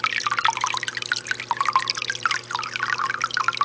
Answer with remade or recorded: recorded